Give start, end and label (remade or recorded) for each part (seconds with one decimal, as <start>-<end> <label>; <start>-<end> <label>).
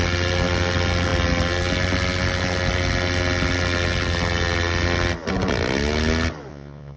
0.0-6.5 recorded; 6.5-7.0 remade